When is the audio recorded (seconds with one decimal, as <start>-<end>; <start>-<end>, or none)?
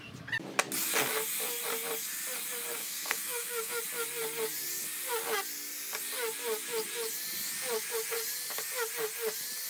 0.0-2.8; 3.7-9.7